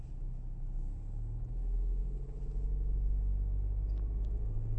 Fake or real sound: real